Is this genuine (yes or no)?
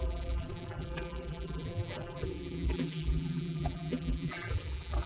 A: no